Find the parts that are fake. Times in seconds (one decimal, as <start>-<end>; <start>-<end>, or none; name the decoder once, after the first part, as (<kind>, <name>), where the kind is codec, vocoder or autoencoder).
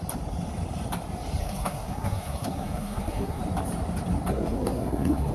1.4-3.4 (codec, SNAC); 4.3-5.3